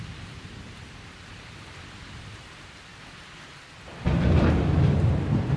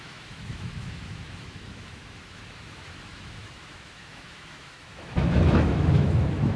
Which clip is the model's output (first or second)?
second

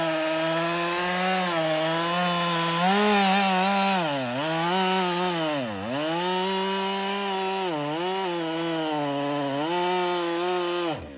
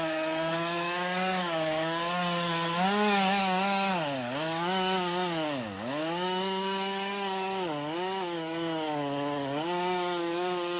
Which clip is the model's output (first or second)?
second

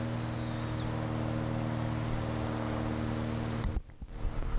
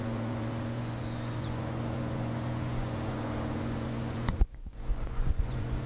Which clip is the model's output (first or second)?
second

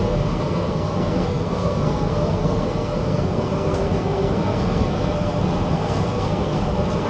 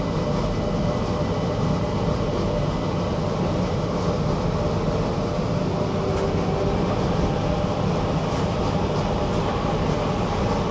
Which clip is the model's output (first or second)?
first